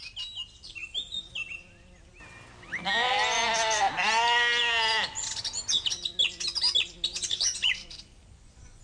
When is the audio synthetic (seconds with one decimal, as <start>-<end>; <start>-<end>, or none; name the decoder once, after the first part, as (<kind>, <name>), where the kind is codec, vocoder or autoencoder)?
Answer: 7.1-8.8 (vocoder, Vocos)